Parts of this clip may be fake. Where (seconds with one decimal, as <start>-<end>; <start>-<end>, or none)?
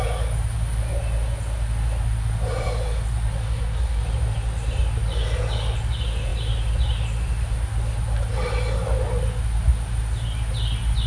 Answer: 3.4-4.0